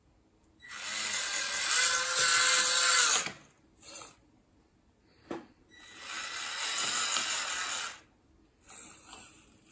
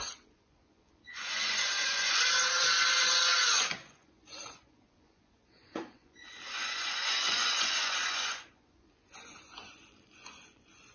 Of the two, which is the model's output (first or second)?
second